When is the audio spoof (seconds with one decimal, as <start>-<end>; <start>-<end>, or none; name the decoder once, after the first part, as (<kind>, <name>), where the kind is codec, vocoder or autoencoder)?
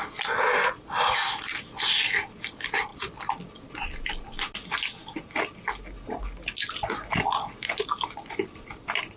none